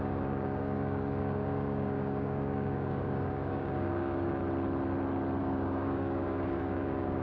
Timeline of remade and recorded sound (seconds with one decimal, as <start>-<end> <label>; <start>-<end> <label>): 0.0-4.4 remade; 4.4-5.4 recorded; 5.4-7.2 remade